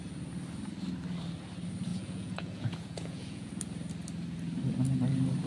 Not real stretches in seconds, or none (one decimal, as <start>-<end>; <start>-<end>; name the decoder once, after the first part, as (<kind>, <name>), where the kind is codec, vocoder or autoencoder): 1.9-3.5 (vocoder, Vocos)